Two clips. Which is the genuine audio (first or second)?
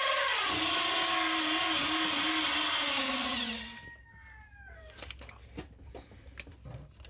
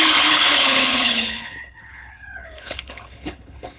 first